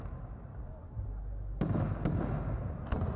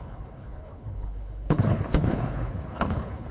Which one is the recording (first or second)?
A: first